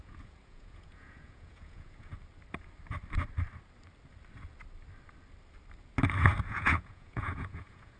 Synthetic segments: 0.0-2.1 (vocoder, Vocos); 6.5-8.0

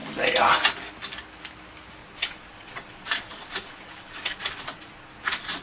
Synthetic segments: 2.0-5.6 (vocoder, Vocos)